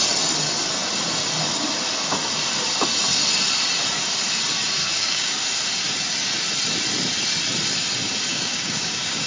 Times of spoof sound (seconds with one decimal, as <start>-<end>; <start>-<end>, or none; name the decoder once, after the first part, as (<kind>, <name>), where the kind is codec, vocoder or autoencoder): 4.8-5.3 (codec, DAC); 8.3-9.3